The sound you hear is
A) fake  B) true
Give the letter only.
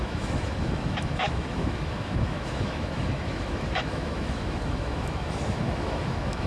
A